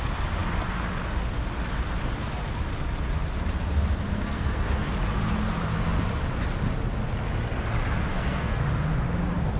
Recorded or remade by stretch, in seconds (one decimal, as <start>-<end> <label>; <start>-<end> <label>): 0.0-4.1 recorded; 4.1-4.9 remade; 4.9-8.1 recorded; 8.1-8.6 remade; 8.6-9.6 recorded